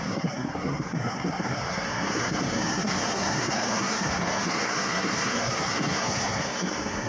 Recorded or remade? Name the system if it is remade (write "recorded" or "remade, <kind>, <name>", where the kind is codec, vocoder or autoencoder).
remade, codec, SNAC